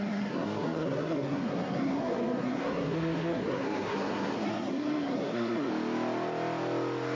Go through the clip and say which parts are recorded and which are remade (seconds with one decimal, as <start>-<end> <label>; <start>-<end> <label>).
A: 0.0-5.7 remade; 5.7-7.2 recorded